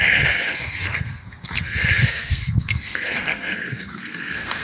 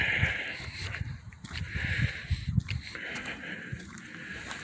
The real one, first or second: second